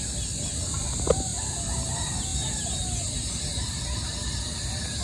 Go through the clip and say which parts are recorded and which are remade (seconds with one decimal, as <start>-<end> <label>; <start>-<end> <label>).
0.0-5.0 recorded